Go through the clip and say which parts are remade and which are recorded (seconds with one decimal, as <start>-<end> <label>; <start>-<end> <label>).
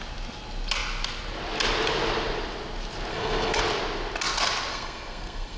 0.0-3.1 recorded; 3.1-3.6 remade; 3.6-4.7 recorded; 4.7-5.6 remade